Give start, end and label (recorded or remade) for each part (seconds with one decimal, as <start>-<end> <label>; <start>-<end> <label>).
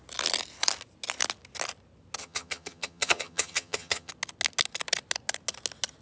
0.0-2.2 recorded; 2.2-4.1 remade; 4.1-6.0 recorded